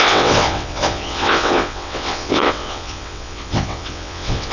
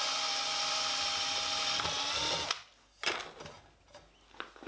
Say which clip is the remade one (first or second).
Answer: first